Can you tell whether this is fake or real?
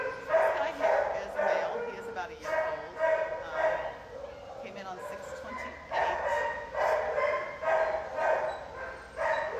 real